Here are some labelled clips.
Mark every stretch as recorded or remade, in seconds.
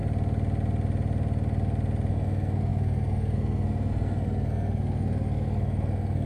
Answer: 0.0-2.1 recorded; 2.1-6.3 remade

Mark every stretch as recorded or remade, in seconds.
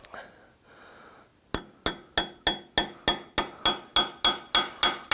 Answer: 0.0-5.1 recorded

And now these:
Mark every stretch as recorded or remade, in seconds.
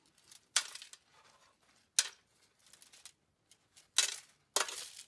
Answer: 0.0-5.1 recorded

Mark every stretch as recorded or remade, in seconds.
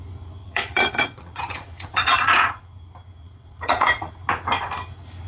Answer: 0.0-0.4 recorded; 0.4-2.7 remade; 2.7-3.2 recorded; 3.2-4.1 remade; 4.1-5.3 recorded